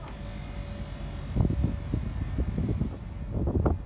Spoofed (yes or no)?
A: no